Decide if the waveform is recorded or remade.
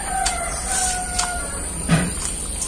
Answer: remade